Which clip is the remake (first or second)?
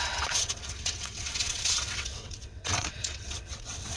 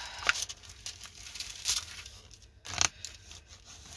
first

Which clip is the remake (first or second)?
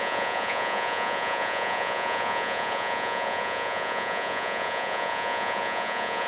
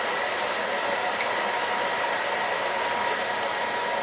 first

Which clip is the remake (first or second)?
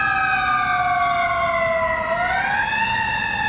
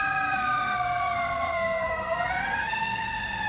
second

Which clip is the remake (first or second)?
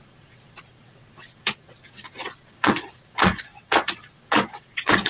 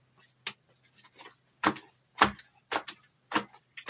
first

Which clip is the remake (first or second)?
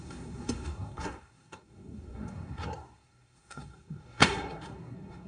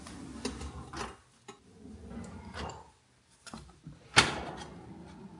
first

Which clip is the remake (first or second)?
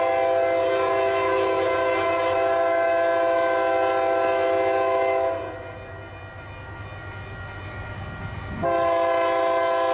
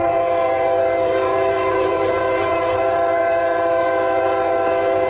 second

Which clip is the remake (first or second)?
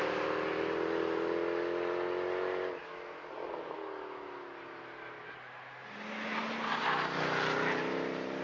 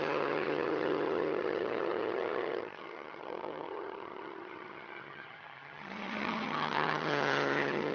second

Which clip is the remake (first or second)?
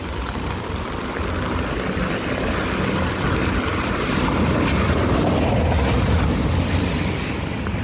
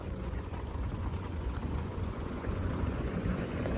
second